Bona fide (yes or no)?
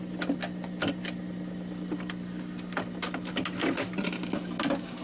yes